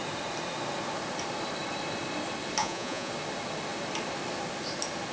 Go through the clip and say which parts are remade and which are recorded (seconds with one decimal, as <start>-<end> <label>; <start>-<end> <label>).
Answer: 0.0-2.6 recorded; 2.6-3.1 remade; 3.1-5.1 recorded